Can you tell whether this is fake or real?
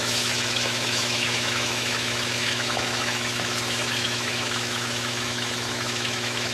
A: fake